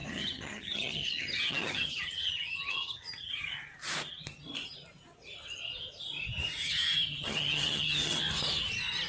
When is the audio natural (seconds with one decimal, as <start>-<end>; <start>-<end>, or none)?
3.4-6.6; 8.2-9.1